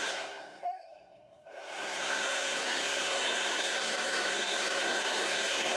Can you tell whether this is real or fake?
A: fake